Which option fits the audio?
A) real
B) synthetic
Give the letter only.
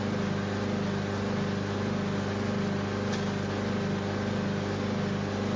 A